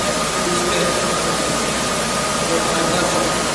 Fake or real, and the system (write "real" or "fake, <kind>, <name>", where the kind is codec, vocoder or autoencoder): real